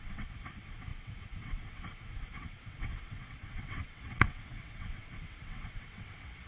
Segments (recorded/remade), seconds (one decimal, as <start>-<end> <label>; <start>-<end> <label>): 0.0-6.5 remade